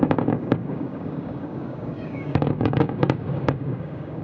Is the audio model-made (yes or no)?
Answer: yes